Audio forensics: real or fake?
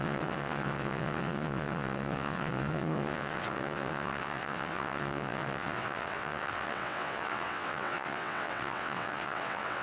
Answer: fake